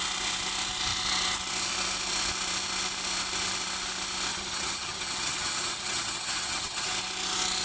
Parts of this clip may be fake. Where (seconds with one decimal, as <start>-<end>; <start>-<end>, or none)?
4.3-6.9